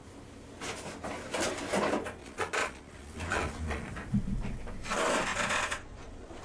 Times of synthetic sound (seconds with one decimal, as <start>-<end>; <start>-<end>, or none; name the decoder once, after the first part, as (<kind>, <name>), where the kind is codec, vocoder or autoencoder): 2.2-3.9 (vocoder, Vocos); 5.3-6.4